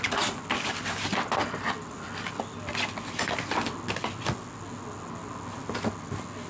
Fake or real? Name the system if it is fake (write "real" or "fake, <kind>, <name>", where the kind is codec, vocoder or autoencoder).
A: real